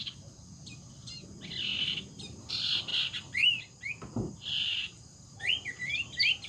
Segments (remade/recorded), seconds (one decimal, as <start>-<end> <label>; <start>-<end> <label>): 0.0-4.7 recorded; 4.7-5.5 remade; 5.5-6.5 recorded

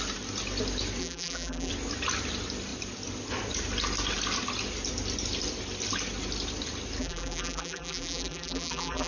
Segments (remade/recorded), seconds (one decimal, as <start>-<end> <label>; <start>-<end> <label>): 0.0-1.0 recorded; 1.0-1.7 remade; 1.7-7.0 recorded; 7.0-9.1 remade

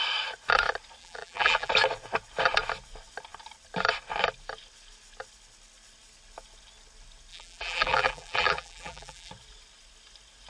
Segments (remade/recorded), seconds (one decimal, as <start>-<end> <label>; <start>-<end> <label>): 0.0-1.0 recorded; 1.0-1.7 remade; 1.7-7.3 recorded; 7.3-9.3 remade; 9.3-10.5 recorded

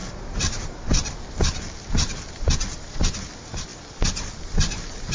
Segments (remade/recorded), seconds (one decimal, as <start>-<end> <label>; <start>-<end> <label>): 0.0-1.1 remade; 1.1-3.7 recorded; 3.7-5.1 remade

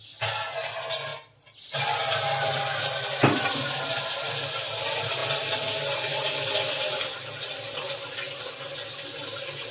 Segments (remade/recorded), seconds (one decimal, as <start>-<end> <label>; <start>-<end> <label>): 0.0-9.7 recorded

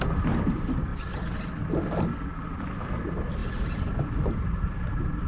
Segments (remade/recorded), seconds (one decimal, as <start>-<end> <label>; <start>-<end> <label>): 0.0-3.4 recorded; 3.4-5.3 remade